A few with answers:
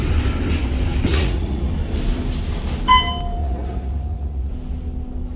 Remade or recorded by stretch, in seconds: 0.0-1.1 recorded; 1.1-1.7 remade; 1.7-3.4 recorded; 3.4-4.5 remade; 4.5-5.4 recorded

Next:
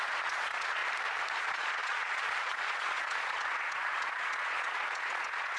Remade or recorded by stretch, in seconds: 0.0-0.8 remade; 0.8-1.4 recorded; 1.4-5.6 remade

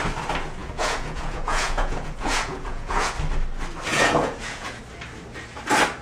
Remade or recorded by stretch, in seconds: 0.0-0.6 recorded; 0.6-3.1 remade; 3.1-3.9 recorded; 3.9-4.8 remade; 4.8-6.0 recorded

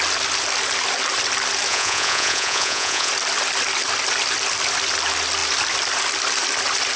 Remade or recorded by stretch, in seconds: 0.0-1.7 recorded; 1.7-3.1 remade; 3.1-7.0 recorded

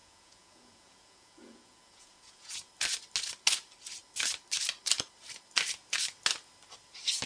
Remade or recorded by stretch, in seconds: 0.0-2.7 remade; 2.7-7.3 recorded

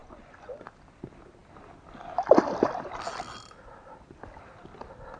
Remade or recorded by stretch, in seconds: 0.0-0.6 remade; 0.6-5.2 recorded